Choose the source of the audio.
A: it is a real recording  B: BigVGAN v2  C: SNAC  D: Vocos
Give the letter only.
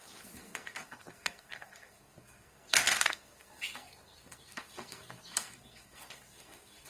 C